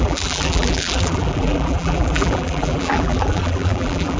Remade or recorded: remade